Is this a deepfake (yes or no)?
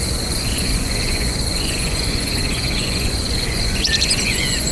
yes